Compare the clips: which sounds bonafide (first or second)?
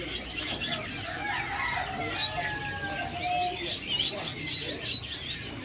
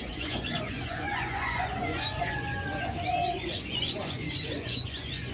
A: first